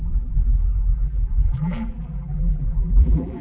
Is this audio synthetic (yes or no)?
yes